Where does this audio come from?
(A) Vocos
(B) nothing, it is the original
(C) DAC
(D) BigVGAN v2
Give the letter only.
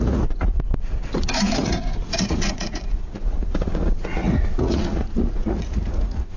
A